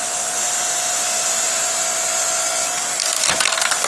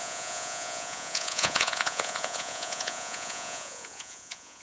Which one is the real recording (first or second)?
first